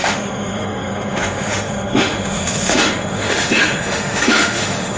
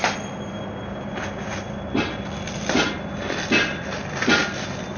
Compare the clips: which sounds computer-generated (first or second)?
first